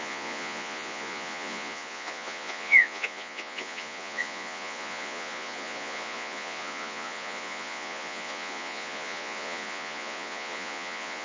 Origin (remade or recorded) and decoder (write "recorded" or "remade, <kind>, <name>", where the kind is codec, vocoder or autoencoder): remade, vocoder, Vocos